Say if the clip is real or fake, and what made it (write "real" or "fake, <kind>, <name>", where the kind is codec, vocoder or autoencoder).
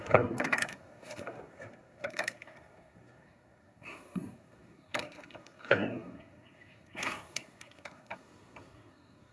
fake, codec, SNAC